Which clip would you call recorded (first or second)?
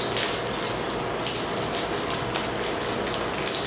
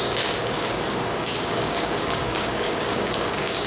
first